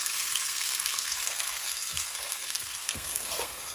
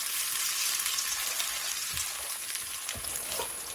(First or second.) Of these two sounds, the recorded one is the second